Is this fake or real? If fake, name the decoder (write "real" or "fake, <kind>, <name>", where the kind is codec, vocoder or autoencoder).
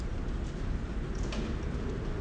real